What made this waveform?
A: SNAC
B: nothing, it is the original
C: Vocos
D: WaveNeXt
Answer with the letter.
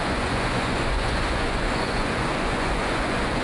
C